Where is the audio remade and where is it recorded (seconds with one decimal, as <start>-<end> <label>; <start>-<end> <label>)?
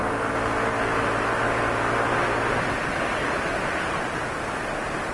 0.0-5.1 recorded